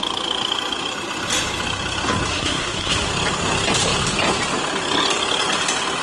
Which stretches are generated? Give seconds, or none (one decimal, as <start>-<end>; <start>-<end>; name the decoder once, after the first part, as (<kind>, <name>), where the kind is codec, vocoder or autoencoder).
2.3-3.1 (codec, SNAC)